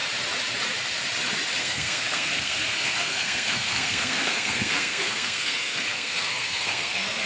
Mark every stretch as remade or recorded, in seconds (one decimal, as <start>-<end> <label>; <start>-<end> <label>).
0.0-1.6 recorded; 1.6-7.3 remade